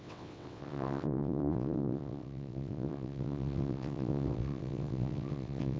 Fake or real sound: fake